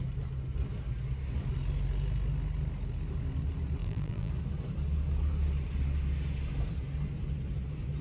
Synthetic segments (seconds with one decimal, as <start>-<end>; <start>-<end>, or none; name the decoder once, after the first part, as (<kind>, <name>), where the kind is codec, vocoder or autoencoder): 3.8-4.3 (vocoder, BigVGAN v2)